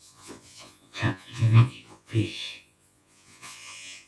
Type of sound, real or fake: fake